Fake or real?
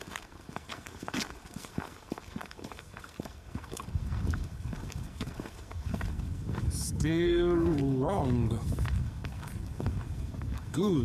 fake